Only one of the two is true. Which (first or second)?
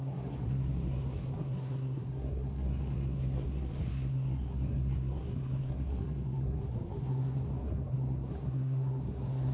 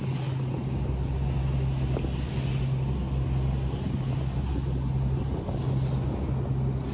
second